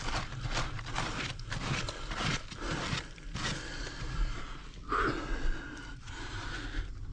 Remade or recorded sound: recorded